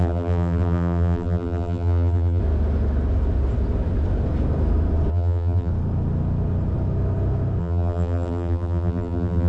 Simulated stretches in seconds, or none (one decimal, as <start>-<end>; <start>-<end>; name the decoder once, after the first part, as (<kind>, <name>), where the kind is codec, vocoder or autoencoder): 0.0-2.4 (vocoder, BigVGAN v2); 5.1-5.7; 7.6-9.5